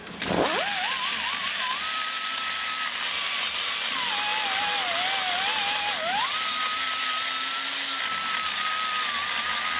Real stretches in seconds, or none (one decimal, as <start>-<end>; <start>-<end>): 0.0-9.8